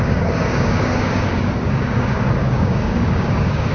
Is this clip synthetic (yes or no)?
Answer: yes